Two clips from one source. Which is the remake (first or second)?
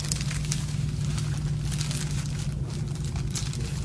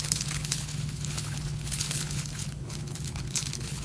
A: second